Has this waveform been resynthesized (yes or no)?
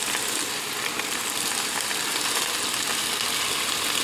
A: no